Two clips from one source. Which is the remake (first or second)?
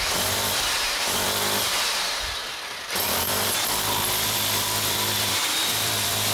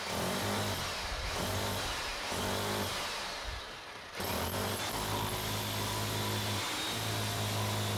first